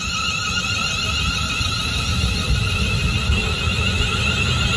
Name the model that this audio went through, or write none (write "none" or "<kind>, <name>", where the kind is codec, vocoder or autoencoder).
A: none